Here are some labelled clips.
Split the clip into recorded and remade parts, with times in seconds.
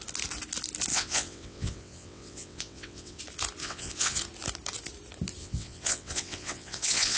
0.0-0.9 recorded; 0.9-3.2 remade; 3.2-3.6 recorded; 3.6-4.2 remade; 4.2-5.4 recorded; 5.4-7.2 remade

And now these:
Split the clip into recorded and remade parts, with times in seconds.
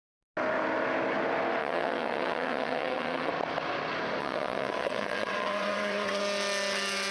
0.0-1.6 recorded; 1.6-3.3 remade; 3.3-4.2 recorded; 4.2-6.2 remade; 6.2-7.1 recorded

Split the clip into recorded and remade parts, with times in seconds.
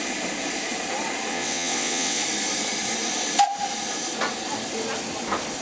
0.0-1.3 recorded; 1.3-2.2 remade; 2.2-5.6 recorded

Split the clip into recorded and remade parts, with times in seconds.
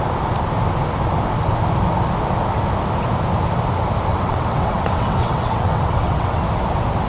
0.0-4.1 recorded; 4.1-6.4 remade; 6.4-7.1 recorded